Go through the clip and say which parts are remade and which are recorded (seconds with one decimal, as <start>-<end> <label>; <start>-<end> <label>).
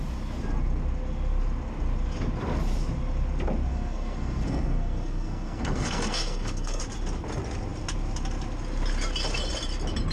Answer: 0.0-3.7 recorded; 3.7-6.8 remade; 6.8-10.1 recorded